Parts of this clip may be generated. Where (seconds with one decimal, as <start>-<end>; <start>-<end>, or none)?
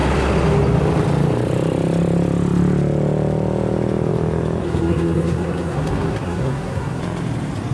4.6-7.0